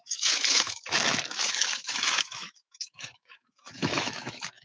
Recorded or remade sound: remade